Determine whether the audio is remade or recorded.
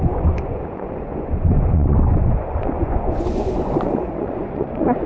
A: remade